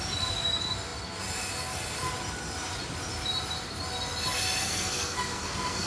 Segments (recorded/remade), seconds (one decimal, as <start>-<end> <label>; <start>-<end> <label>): 0.0-4.6 recorded; 4.6-5.9 remade